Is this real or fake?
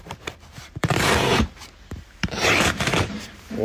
fake